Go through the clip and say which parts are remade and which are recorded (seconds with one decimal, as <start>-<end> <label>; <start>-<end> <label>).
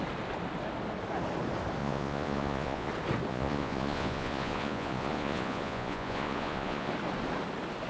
0.0-1.8 recorded; 1.8-2.9 remade; 2.9-3.3 recorded; 3.3-6.9 remade; 6.9-7.9 recorded